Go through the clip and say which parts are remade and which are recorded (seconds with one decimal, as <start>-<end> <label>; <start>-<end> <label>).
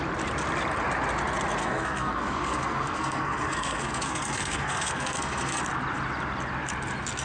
0.0-1.6 recorded; 1.6-5.6 remade; 5.6-7.2 recorded